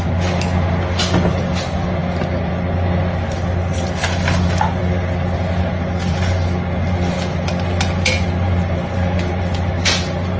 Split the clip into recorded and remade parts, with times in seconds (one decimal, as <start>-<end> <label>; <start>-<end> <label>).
0.0-10.4 recorded